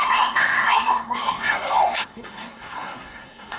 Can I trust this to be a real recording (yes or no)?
no